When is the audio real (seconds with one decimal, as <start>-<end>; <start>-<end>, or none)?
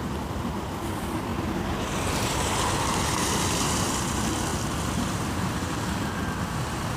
1.3-1.8